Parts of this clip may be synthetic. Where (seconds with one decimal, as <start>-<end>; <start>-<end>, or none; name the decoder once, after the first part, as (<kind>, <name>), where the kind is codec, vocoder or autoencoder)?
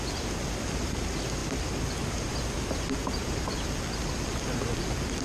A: 1.4-2.3 (vocoder, BigVGAN v2); 3.2-3.7